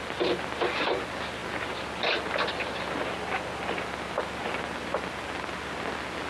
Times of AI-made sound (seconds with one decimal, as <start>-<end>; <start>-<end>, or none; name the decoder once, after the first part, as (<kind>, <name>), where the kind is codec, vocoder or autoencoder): none